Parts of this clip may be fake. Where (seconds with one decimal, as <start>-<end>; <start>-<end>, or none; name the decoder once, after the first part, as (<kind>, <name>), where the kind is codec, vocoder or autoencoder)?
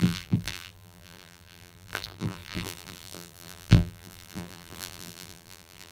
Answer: 0.0-5.9 (vocoder, BigVGAN v2)